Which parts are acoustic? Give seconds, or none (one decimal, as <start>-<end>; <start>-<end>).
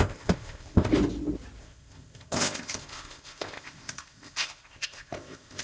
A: 0.9-1.6